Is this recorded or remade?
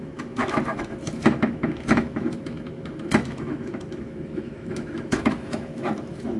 remade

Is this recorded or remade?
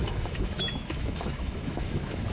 remade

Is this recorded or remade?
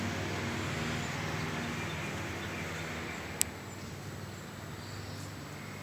recorded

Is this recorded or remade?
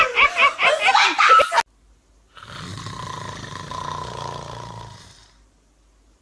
recorded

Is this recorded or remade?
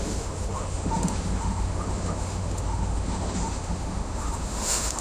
remade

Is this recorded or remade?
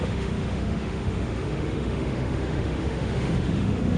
remade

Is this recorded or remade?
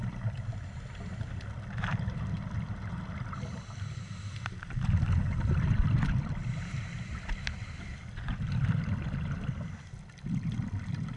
recorded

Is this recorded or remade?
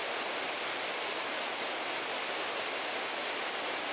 recorded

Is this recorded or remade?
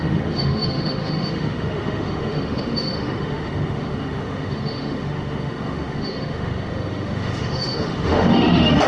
remade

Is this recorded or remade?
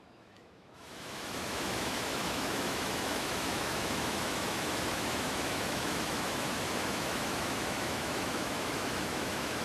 remade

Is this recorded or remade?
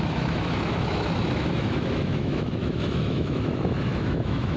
remade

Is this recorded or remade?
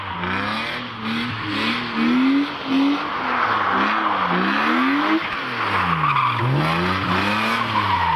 recorded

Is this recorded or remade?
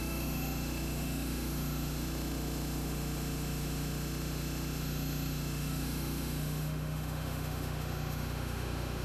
remade